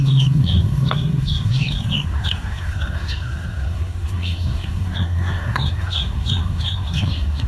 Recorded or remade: remade